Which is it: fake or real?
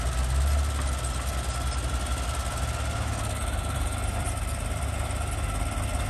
real